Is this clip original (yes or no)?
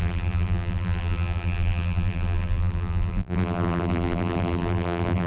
no